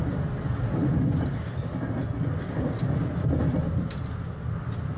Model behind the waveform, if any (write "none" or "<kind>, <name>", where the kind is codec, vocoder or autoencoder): none